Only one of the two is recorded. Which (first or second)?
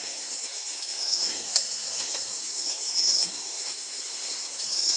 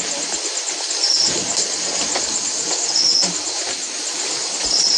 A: second